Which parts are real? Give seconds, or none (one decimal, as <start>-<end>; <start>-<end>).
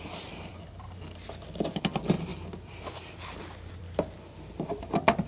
0.0-0.5; 1.0-5.3